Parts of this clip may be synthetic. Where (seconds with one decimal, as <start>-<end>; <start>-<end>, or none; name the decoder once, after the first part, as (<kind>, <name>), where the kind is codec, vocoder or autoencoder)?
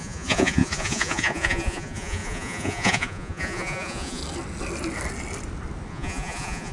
0.0-4.2 (vocoder, Vocos); 5.9-6.7